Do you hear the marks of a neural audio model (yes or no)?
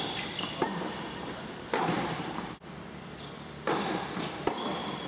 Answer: yes